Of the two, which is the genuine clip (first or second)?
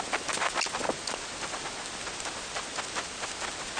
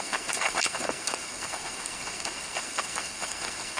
first